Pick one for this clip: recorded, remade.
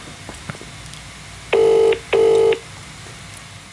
recorded